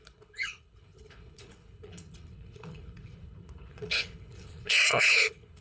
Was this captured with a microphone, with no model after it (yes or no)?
no